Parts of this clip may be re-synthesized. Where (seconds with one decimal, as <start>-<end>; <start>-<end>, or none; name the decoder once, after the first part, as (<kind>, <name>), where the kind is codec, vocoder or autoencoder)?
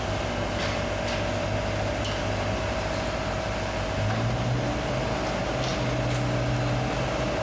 none